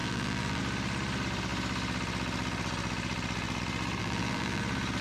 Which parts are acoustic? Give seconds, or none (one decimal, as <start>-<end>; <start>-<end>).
0.6-4.0; 4.6-5.0